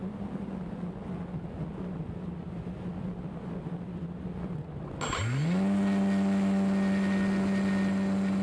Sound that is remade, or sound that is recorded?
recorded